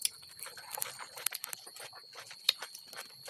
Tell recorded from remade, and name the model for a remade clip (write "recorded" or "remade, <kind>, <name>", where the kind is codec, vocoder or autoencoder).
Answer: recorded